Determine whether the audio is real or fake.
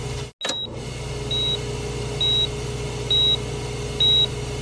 real